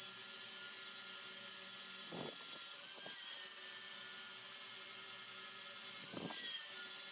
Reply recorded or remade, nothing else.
recorded